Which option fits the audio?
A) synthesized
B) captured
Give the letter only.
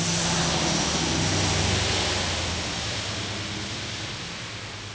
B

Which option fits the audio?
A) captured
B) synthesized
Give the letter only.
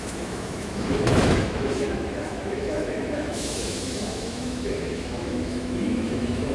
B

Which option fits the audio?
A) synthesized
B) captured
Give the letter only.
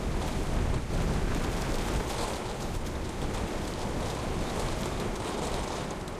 B